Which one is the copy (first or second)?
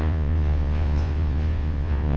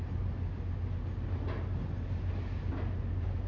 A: first